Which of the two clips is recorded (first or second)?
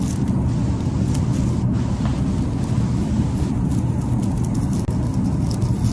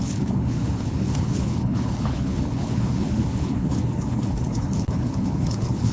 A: first